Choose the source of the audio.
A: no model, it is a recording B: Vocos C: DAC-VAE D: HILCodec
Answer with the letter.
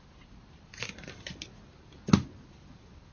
A